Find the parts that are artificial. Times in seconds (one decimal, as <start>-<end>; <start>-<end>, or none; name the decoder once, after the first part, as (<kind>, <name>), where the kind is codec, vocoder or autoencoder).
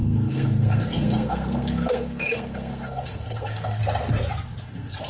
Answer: 0.0-3.8 (codec, SNAC); 4.6-5.1